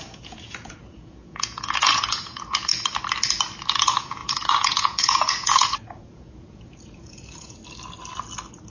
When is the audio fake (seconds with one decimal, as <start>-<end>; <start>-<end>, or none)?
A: 0.0-2.7; 3.7-7.6